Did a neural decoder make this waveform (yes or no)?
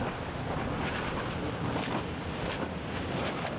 no